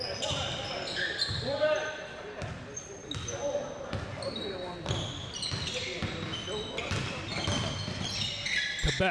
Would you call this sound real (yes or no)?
yes